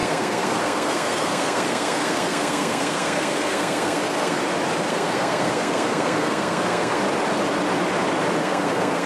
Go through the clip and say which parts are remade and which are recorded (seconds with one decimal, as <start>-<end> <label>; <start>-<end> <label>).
0.0-4.4 remade; 4.4-4.9 recorded; 4.9-7.0 remade; 7.0-8.4 recorded; 8.4-9.1 remade